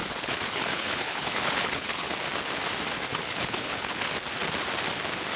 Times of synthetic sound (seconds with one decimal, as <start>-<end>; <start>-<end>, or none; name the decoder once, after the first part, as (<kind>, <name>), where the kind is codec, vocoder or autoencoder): 0.0-2.1 (codec, HILCodec); 3.1-4.1